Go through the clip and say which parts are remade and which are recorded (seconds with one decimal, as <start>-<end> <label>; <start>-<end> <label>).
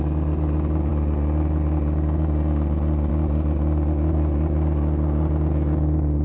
0.0-6.2 recorded